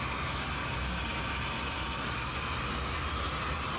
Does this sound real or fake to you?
real